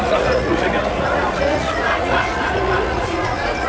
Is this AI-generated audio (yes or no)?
yes